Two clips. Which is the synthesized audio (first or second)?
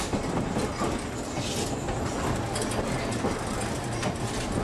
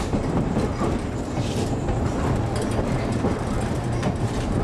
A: second